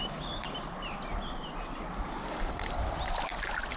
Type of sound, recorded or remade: recorded